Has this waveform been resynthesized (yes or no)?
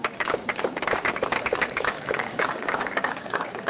yes